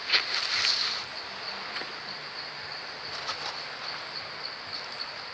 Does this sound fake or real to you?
real